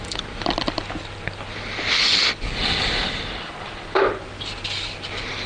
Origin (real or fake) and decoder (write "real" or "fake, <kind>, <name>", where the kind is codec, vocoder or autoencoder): real